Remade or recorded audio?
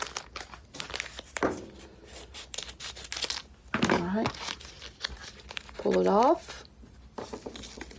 recorded